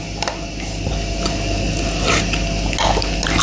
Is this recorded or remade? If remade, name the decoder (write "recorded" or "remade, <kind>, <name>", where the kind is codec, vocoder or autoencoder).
recorded